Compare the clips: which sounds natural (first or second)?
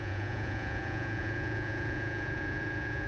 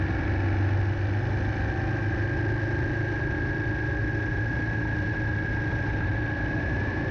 second